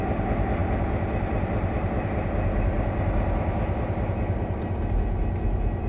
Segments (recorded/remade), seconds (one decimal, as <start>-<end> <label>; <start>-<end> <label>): 0.0-5.9 recorded